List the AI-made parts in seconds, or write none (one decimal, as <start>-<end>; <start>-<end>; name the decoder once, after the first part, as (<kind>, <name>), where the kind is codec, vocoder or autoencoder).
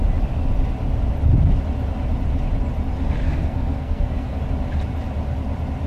3.2-4.4 (codec, SNAC)